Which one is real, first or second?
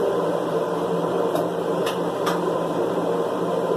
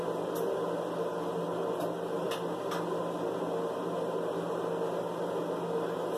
second